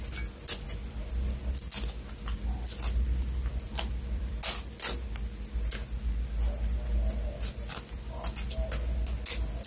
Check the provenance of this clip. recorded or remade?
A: recorded